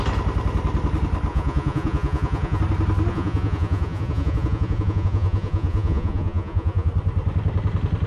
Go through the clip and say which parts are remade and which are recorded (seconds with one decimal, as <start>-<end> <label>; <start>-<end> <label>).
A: 0.0-1.3 recorded; 1.3-2.6 remade; 2.6-3.1 recorded; 3.1-6.9 remade; 6.9-8.1 recorded